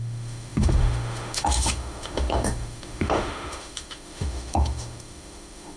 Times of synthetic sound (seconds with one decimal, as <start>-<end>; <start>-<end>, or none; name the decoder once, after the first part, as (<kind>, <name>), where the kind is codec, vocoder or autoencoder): 0.0-5.8 (autoencoder, DAC-VAE)